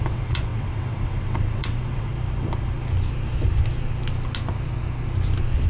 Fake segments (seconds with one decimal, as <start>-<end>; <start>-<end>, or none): 0.0-2.1